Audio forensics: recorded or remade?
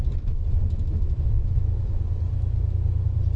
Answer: recorded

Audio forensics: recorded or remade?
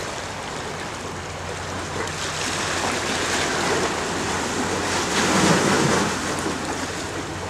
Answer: recorded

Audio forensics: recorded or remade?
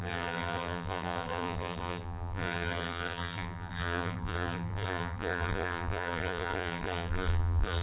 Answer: remade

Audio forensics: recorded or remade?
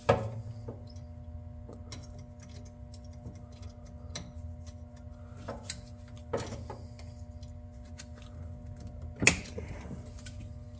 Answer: recorded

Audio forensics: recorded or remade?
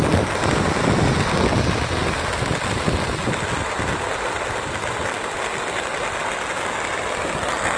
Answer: recorded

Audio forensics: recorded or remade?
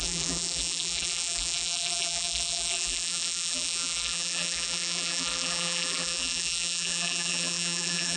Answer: remade